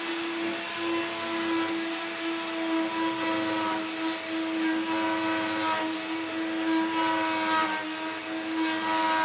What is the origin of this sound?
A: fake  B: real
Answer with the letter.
B